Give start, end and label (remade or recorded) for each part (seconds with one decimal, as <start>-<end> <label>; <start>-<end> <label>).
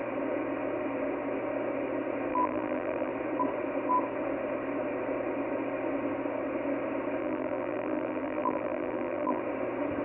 0.0-2.3 recorded; 2.3-3.1 remade; 3.1-7.2 recorded; 7.2-9.4 remade; 9.4-10.0 recorded